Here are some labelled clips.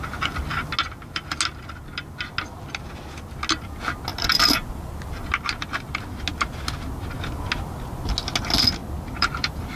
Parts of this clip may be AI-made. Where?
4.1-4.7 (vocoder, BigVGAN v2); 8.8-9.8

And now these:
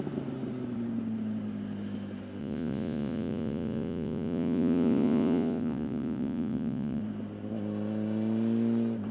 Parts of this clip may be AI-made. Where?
2.4-7.0 (vocoder, Vocos)

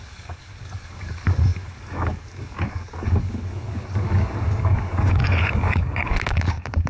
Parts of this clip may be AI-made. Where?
0.0-6.9 (codec, DAC)

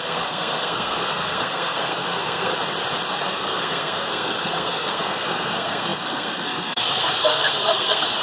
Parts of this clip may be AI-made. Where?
0.0-2.5 (codec, SNAC); 3.1-8.2

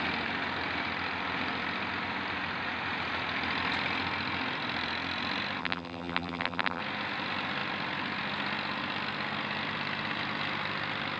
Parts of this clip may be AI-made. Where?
5.6-6.8 (vocoder, BigVGAN v2)